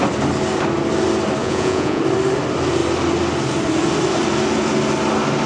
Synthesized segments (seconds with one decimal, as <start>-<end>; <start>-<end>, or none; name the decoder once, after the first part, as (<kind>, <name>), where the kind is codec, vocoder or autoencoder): 1.4-2.0 (vocoder, Vocos)